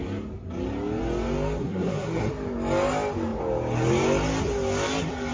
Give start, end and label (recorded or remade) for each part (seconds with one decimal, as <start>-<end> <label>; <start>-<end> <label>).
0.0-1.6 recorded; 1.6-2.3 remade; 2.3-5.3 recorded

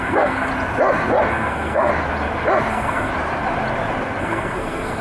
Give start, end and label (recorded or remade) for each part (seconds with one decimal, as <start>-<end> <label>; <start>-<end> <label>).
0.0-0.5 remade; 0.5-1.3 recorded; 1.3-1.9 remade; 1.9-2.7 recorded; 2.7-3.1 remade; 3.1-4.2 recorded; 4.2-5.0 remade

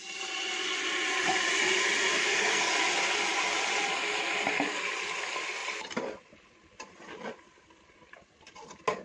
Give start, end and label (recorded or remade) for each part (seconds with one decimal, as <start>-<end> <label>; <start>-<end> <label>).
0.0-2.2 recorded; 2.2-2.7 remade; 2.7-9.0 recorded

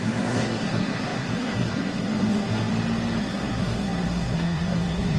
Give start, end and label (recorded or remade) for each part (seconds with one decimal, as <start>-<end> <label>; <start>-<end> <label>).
0.0-2.7 remade; 2.7-3.2 recorded; 3.2-5.2 remade

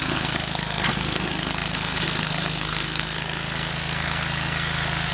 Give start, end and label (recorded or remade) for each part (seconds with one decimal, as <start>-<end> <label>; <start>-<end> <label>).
0.0-5.1 remade

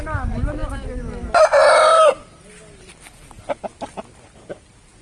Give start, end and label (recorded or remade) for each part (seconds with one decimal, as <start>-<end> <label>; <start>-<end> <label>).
0.0-5.0 recorded